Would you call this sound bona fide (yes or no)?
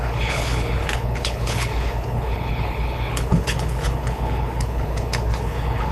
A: no